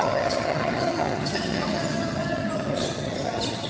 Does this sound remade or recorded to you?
remade